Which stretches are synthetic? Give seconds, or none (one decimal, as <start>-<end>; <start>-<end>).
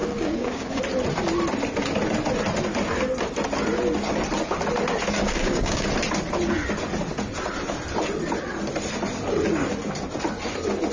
0.0-0.8; 5.2-5.9